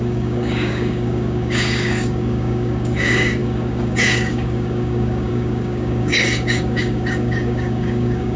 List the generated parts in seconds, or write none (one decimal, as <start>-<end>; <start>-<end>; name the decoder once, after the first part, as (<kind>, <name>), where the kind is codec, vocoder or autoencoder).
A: 0.0-8.4 (codec, DAC)